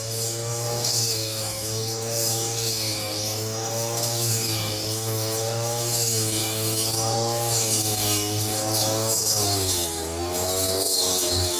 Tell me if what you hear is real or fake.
fake